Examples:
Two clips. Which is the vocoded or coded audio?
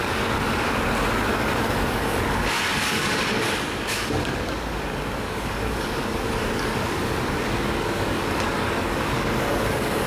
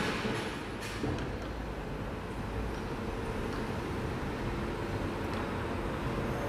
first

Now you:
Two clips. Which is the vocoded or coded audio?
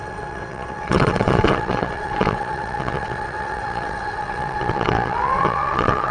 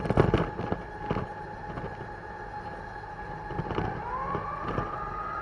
first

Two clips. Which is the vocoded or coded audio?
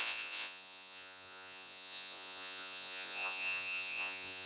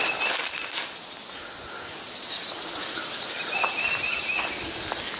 first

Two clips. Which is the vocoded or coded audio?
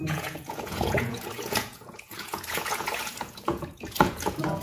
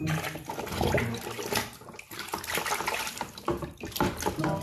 first